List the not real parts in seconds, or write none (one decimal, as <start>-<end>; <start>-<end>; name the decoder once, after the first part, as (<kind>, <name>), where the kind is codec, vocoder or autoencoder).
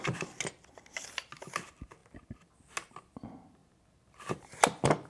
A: none